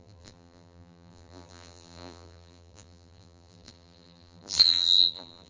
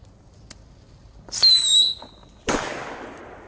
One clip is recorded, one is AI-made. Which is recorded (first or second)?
second